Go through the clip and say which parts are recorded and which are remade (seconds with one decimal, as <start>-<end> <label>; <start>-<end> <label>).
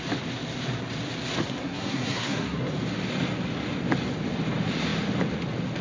0.0-1.4 recorded; 1.4-2.7 remade; 2.7-5.8 recorded